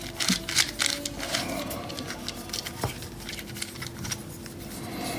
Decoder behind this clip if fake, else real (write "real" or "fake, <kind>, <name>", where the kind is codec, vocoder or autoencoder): real